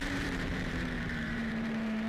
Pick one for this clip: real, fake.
fake